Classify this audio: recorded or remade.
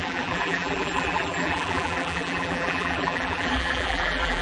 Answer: remade